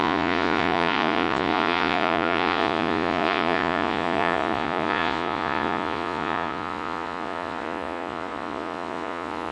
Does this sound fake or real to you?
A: fake